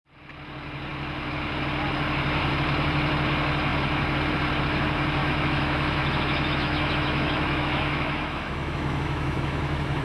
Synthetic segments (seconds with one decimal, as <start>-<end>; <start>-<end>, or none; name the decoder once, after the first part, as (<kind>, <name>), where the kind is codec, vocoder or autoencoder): 5.2-10.0 (autoencoder, DAC-VAE)